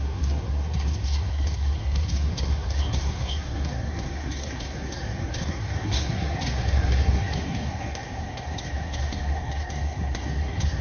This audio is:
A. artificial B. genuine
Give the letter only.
A